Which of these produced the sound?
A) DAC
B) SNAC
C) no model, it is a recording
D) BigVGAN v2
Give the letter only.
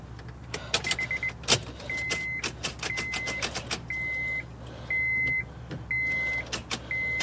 C